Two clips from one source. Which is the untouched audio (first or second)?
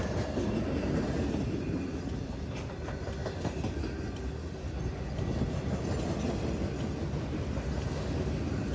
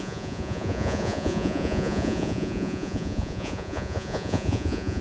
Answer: first